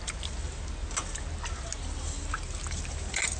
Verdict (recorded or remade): recorded